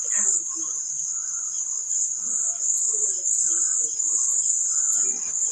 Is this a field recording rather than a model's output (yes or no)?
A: yes